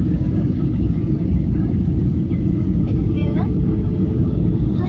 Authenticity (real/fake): fake